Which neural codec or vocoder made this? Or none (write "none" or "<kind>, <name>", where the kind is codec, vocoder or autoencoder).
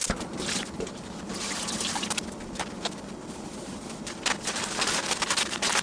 none